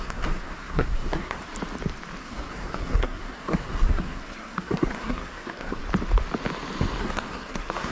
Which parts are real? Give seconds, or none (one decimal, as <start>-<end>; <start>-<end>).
1.4-2.2; 5.8-7.0